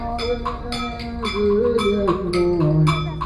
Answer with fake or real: real